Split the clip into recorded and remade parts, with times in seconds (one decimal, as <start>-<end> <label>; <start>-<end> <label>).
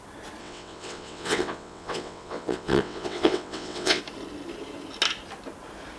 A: 0.0-0.4 recorded; 0.4-4.0 remade; 4.0-6.0 recorded